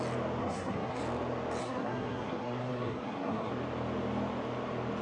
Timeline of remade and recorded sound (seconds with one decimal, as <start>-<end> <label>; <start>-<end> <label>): 0.0-0.4 recorded; 0.4-1.0 remade; 1.0-1.6 recorded; 1.6-3.5 remade; 3.5-5.0 recorded